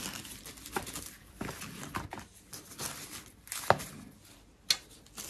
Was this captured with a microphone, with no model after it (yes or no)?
yes